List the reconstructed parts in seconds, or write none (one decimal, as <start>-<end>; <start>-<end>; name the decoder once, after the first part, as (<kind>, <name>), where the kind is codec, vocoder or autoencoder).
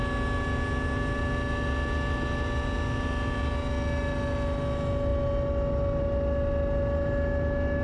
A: none